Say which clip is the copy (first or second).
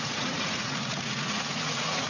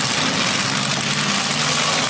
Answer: first